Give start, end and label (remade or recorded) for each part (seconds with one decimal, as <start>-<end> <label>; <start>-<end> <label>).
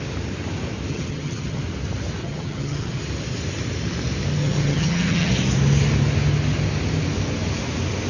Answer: 0.0-0.9 recorded; 0.9-1.6 remade; 1.6-2.2 recorded; 2.2-3.0 remade; 3.0-4.4 recorded; 4.4-5.3 remade; 5.3-8.1 recorded